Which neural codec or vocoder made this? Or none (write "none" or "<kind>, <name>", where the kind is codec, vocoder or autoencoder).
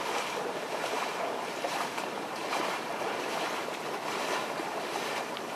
vocoder, BigVGAN v2